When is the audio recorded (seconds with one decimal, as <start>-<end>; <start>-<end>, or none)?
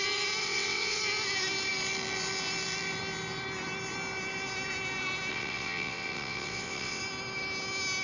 0.0-0.4; 1.0-5.3; 7.0-8.0